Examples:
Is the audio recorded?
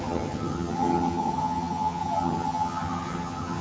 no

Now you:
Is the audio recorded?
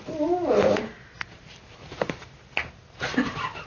no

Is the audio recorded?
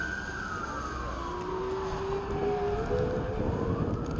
yes